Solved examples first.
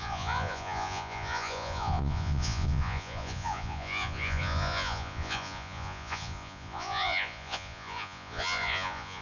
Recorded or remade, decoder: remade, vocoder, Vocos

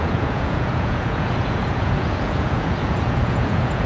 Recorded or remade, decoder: remade, vocoder, Vocos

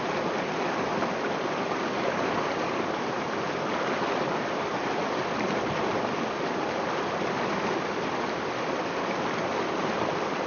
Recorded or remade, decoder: recorded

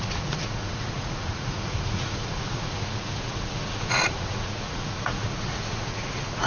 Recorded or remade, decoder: remade, vocoder, Vocos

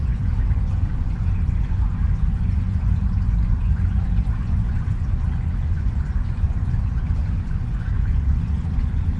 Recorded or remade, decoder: remade, vocoder, Vocos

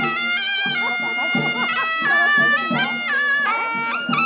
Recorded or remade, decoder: recorded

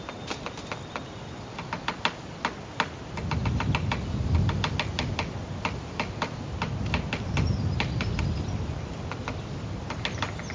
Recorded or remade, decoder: recorded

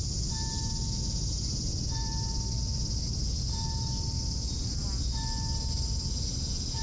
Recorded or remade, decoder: recorded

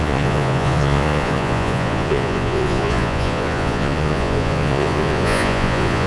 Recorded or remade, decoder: remade, vocoder, Vocos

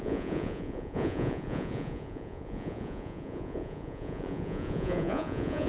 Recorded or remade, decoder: remade, vocoder, Vocos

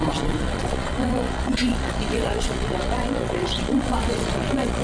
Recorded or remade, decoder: remade, vocoder, Vocos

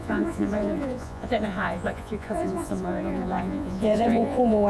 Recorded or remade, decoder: remade, vocoder, Vocos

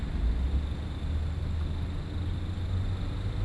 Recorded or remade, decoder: recorded